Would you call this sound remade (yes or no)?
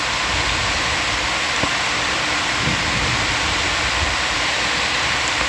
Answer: yes